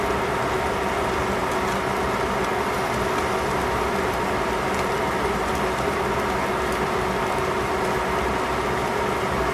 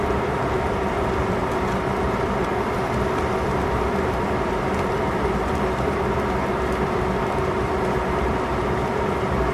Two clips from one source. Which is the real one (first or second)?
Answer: first